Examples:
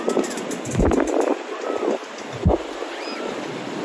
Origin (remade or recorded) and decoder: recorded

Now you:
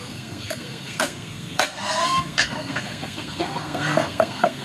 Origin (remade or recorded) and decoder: remade, codec, SNAC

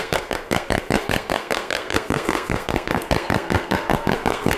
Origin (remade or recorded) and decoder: remade, codec, SNAC